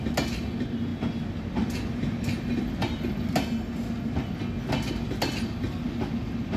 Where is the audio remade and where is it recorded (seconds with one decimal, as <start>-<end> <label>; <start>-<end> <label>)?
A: 0.0-6.6 recorded